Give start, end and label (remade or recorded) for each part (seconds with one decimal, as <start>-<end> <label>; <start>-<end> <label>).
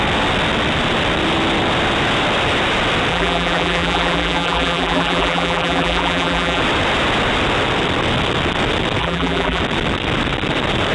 0.0-3.1 recorded; 3.1-6.6 remade; 6.6-9.0 recorded; 9.0-9.6 remade; 9.6-10.9 recorded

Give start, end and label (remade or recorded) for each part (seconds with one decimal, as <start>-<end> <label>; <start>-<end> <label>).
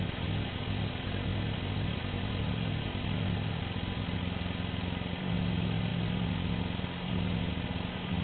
0.0-8.2 recorded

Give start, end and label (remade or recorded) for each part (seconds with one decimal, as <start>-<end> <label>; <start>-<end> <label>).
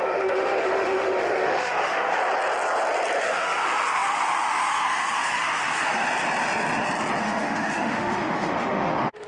0.0-2.2 remade; 2.2-3.2 recorded; 3.2-5.9 remade; 5.9-7.2 recorded; 7.2-9.3 remade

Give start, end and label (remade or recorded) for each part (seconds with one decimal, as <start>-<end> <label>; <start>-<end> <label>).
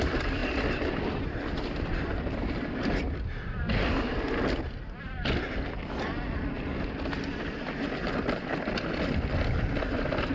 0.0-10.3 recorded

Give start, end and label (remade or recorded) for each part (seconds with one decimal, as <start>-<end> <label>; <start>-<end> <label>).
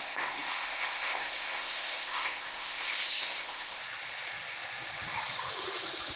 0.0-3.8 remade; 3.8-6.2 recorded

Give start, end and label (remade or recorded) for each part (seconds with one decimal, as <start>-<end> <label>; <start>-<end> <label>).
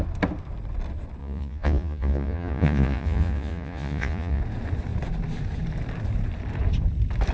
0.0-1.2 recorded; 1.2-4.4 remade; 4.4-7.3 recorded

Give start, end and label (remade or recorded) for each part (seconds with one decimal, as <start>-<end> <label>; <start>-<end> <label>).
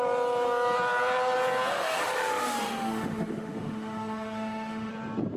0.0-1.7 recorded; 1.7-4.9 remade; 4.9-5.4 recorded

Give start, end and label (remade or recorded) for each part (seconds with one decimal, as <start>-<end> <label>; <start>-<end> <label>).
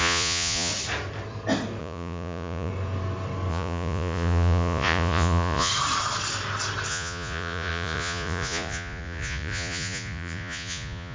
0.0-0.7 remade; 0.7-1.8 recorded; 1.8-2.7 remade; 2.7-3.5 recorded; 3.5-5.7 remade; 5.7-6.9 recorded; 6.9-11.1 remade